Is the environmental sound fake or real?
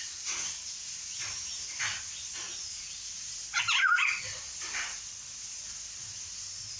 real